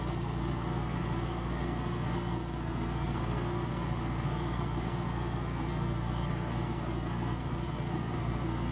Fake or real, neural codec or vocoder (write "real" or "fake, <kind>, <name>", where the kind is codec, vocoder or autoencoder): fake, codec, SNAC